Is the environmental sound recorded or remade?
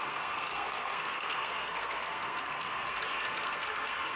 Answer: remade